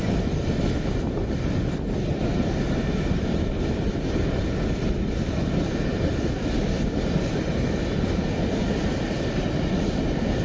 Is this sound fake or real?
real